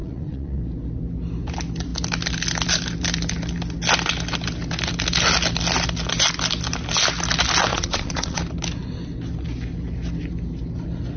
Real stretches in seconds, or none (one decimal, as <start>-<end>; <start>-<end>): 0.6-7.7; 8.4-11.2